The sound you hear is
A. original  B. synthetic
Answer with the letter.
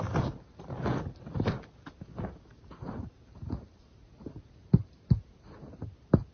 A